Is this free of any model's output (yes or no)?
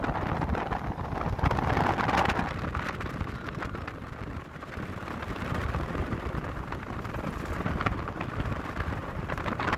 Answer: yes